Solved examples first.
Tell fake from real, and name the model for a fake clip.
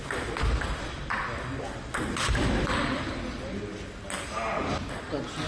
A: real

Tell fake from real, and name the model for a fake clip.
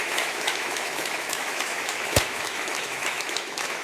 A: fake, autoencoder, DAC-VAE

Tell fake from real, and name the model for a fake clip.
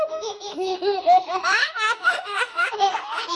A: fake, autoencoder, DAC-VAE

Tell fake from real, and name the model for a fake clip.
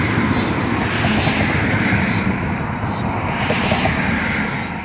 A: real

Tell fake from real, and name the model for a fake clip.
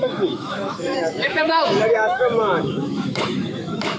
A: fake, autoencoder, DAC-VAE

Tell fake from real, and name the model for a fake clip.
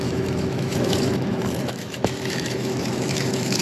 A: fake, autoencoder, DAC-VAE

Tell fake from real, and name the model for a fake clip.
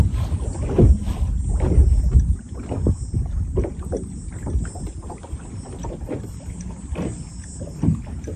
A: real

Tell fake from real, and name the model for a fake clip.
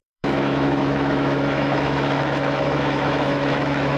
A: fake, autoencoder, DAC-VAE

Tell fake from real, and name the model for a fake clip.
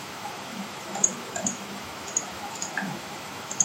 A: fake, autoencoder, DAC-VAE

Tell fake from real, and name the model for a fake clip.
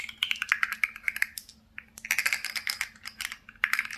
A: real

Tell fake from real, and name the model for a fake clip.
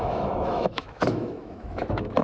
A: fake, autoencoder, DAC-VAE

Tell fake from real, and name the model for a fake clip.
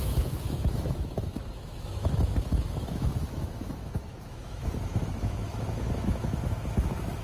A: fake, autoencoder, DAC-VAE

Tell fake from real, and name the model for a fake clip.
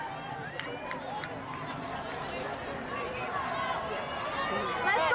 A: real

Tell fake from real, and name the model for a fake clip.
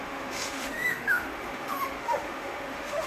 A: fake, autoencoder, DAC-VAE